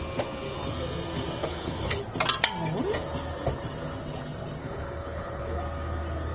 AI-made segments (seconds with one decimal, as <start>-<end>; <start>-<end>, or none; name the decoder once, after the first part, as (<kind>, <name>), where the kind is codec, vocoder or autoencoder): 1.4-2.0 (codec, HILCodec); 4.6-5.6

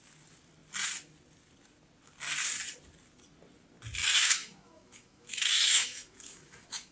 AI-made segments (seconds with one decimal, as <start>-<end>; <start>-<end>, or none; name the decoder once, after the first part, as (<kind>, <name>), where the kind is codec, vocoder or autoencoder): 4.0-6.9 (autoencoder, DAC-VAE)

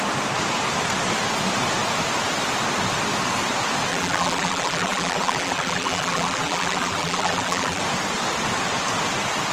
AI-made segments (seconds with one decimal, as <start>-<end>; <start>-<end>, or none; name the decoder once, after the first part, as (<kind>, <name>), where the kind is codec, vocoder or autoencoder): 3.9-7.8 (vocoder, BigVGAN v2)